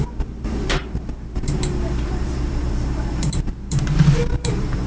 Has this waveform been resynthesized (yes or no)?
yes